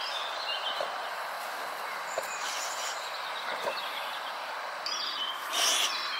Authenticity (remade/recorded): recorded